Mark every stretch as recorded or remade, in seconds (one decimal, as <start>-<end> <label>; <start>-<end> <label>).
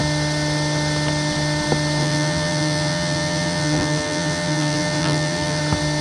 0.0-2.0 recorded; 2.0-5.6 remade; 5.6-6.0 recorded